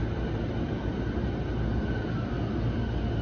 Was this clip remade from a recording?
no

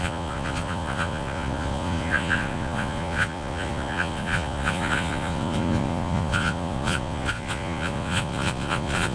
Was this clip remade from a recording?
yes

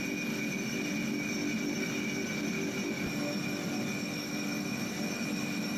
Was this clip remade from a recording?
no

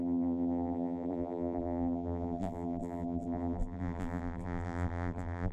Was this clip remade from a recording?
yes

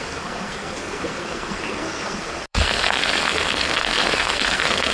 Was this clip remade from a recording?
yes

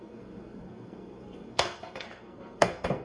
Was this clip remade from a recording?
yes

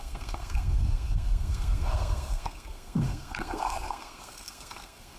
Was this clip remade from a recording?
yes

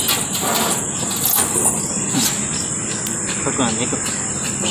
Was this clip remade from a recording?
no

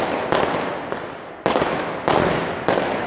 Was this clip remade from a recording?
no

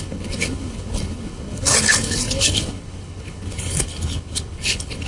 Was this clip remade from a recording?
yes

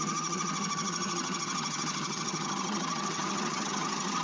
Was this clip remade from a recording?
yes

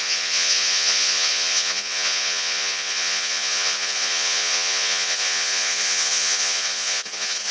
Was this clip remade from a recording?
yes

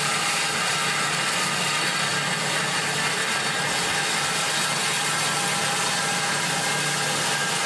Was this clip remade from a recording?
no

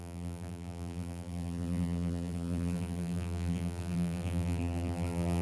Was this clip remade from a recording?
yes